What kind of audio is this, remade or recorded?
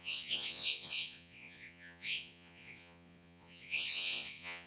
remade